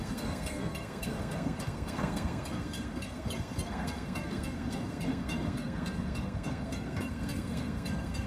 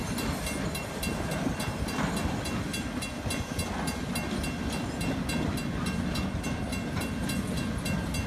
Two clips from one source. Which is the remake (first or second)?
first